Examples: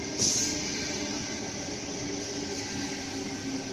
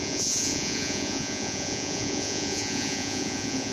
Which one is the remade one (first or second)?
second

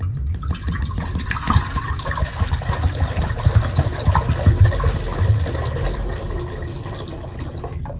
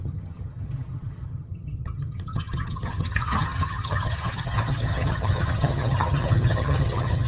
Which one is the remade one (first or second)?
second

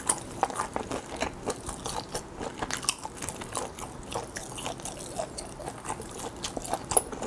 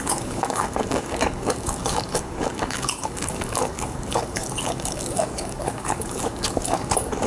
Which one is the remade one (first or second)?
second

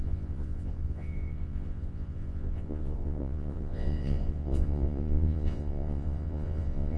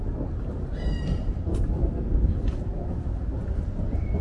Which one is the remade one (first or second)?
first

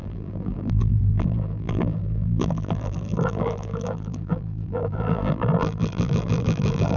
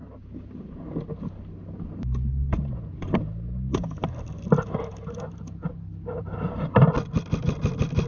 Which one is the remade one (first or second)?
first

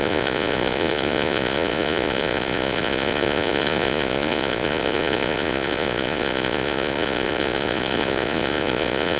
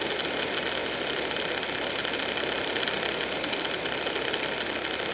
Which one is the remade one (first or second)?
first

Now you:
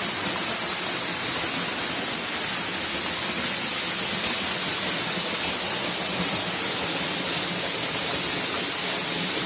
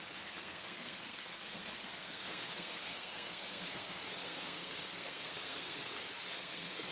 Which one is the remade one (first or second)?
second